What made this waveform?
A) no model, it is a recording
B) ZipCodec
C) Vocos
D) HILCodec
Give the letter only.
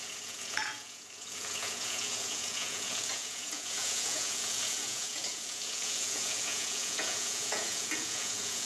C